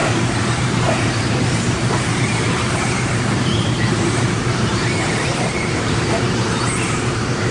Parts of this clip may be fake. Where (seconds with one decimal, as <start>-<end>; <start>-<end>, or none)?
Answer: 0.0-7.5